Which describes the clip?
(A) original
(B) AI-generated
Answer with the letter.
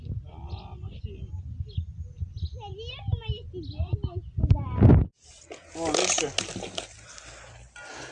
A